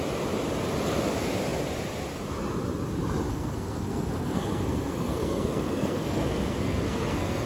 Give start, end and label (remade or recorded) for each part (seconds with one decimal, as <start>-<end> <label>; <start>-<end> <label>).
0.0-3.3 recorded; 3.3-7.5 remade